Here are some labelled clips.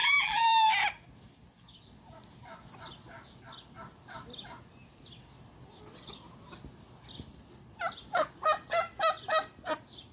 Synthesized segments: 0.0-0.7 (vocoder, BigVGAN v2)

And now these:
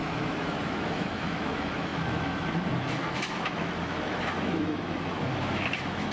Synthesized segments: 0.0-6.1 (autoencoder, DAC-VAE)

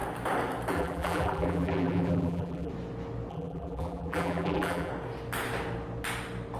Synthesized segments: 0.7-2.7 (vocoder, BigVGAN v2); 3.3-4.9

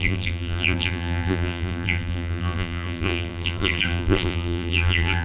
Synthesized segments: 0.0-5.2 (vocoder, BigVGAN v2)

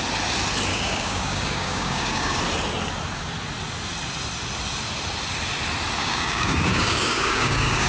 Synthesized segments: 0.7-2.4 (codec, DAC); 6.0-7.9

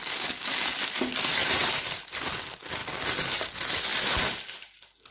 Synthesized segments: 1.4-2.3 (vocoder, BigVGAN v2)

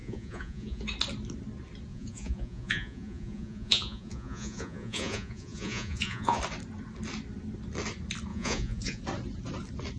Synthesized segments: 0.0-0.8 (vocoder, Vocos); 1.9-6.4; 8.3-9.0